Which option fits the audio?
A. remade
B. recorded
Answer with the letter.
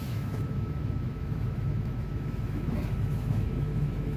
A